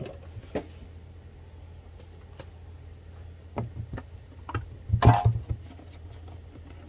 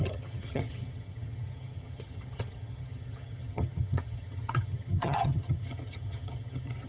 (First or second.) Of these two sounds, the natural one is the first